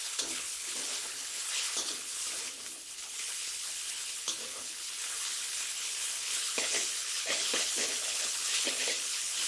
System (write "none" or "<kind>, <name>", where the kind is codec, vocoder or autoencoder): codec, HILCodec